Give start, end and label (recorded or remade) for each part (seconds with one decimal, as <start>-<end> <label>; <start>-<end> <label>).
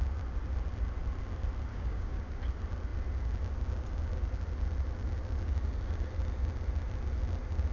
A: 0.0-1.7 recorded; 1.7-2.4 remade; 2.4-7.7 recorded